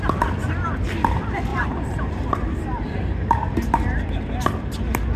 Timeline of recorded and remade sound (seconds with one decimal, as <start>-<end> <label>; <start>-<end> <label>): 0.0-1.5 recorded; 1.5-4.6 remade; 4.6-5.2 recorded